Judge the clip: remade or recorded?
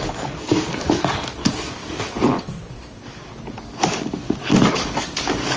remade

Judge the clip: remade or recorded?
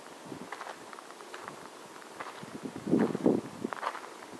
recorded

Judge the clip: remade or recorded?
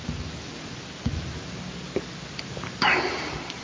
recorded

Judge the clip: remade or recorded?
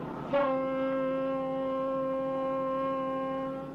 recorded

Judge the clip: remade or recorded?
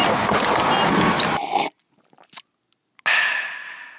recorded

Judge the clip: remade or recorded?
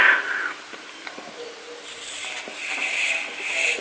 recorded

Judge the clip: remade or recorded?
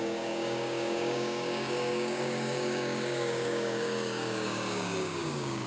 remade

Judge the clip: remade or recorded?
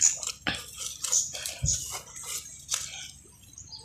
recorded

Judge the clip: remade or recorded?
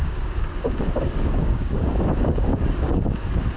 remade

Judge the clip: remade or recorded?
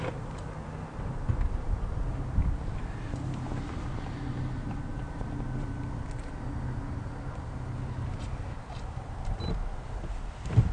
recorded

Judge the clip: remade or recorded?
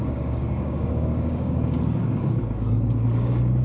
remade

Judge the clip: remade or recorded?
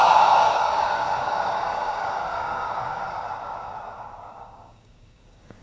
remade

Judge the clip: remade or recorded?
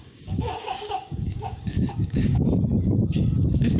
remade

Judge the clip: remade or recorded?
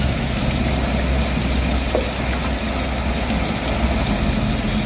recorded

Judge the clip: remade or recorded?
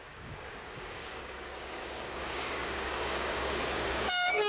remade